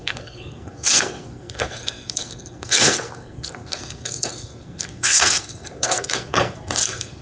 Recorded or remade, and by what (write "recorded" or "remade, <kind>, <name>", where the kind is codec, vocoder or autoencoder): remade, codec, SNAC